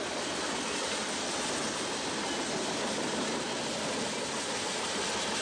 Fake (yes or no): no